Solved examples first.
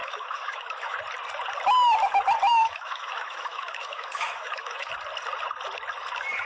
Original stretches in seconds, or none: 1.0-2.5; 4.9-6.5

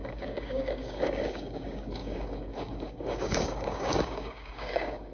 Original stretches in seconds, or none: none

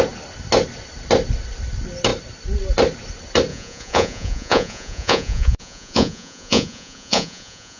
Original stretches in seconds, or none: 0.0-3.5

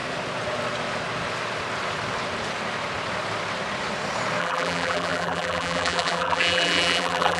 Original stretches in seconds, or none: 0.0-4.4